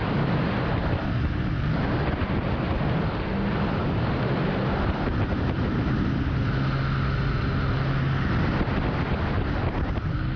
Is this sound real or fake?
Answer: real